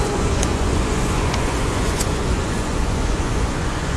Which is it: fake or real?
fake